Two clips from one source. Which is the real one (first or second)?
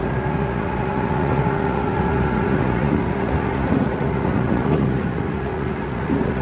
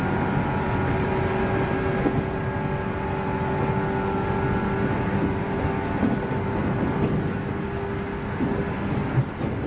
second